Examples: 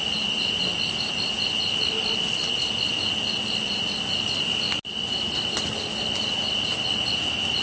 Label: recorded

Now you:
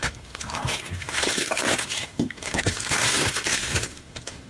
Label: remade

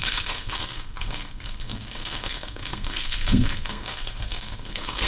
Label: remade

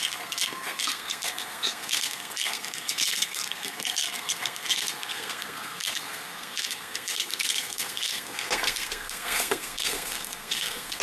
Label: remade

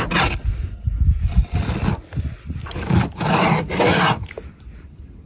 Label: recorded